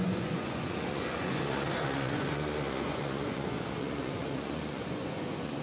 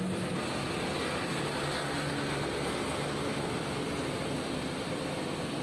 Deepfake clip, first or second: first